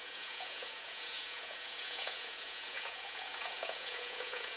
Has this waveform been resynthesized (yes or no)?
yes